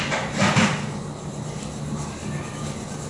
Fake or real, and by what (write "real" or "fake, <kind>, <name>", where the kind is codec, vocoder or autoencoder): real